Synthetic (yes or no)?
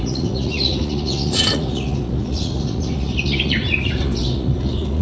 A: yes